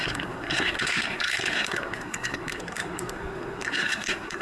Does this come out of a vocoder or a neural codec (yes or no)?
yes